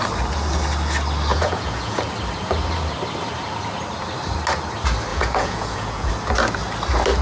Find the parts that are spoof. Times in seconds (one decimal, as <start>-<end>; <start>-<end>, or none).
1.3-2.0; 5.1-6.1